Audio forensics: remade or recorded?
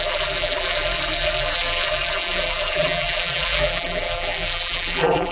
remade